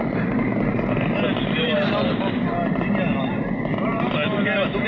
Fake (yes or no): no